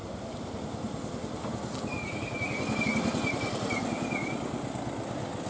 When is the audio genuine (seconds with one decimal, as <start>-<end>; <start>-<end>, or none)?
0.0-5.5